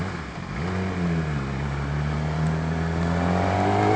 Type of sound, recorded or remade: recorded